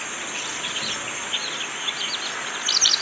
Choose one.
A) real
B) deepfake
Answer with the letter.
A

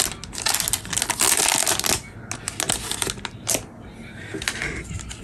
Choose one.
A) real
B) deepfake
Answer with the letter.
A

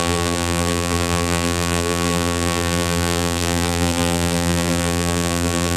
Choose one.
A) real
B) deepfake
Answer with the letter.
B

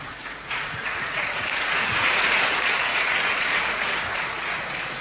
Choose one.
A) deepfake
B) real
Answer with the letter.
A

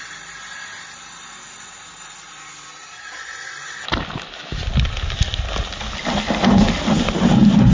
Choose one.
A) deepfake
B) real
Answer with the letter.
B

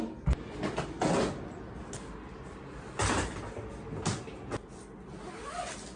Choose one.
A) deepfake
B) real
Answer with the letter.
B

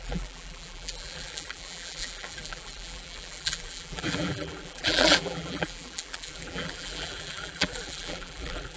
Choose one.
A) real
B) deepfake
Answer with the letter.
B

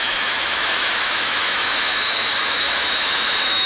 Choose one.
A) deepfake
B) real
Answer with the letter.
A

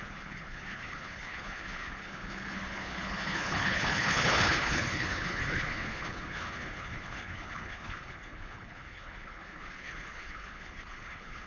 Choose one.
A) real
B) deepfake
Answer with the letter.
B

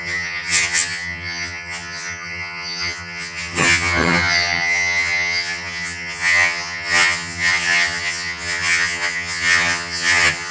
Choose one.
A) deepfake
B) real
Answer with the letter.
A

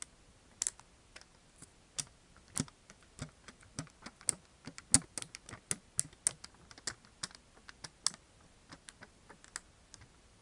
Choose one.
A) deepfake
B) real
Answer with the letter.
B